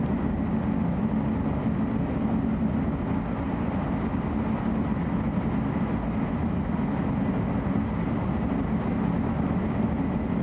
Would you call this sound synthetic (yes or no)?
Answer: no